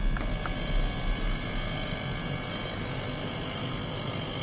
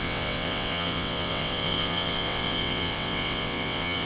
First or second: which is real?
first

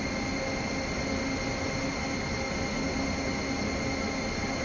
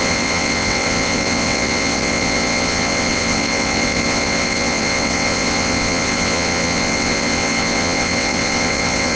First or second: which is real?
first